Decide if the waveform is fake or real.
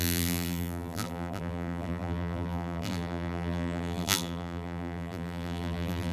fake